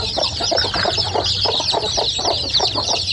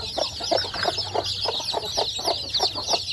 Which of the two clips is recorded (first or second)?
second